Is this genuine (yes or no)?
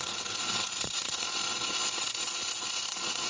no